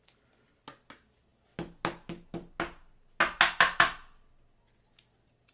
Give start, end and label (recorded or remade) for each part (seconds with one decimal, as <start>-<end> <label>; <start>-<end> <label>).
0.0-5.5 recorded